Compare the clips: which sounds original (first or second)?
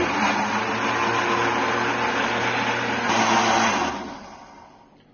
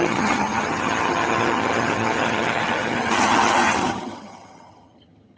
first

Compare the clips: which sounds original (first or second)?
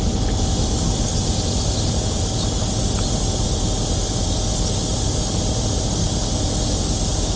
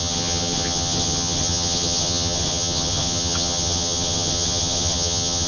first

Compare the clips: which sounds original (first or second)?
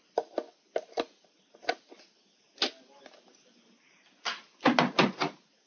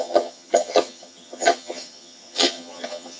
first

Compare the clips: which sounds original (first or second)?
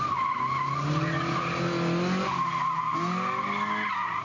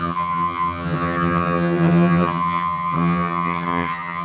first